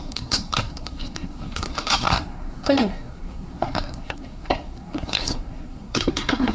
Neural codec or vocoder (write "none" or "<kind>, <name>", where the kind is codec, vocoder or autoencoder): codec, SNAC